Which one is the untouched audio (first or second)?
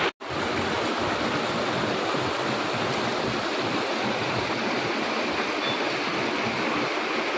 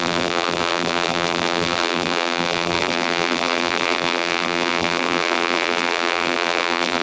first